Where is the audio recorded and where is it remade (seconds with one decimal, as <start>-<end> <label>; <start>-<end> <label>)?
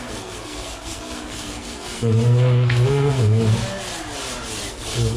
0.0-3.6 remade; 3.6-4.7 recorded; 4.7-5.2 remade